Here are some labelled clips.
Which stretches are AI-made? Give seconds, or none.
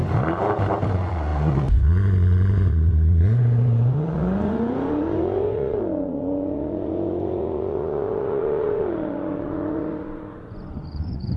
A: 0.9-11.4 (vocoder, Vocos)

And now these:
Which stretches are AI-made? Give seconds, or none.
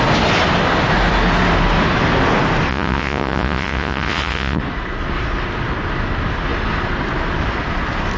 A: 2.7-4.6 (vocoder, Vocos)